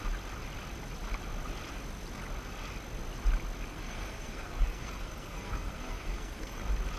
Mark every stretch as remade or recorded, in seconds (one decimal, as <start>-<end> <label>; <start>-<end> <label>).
0.0-3.7 recorded; 3.7-6.6 remade; 6.6-7.0 recorded